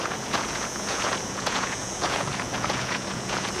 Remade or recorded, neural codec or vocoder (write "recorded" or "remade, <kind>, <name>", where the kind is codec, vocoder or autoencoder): remade, vocoder, Vocos